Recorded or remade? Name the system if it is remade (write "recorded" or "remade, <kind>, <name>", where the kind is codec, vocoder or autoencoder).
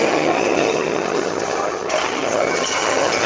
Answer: remade, vocoder, HiFi-GAN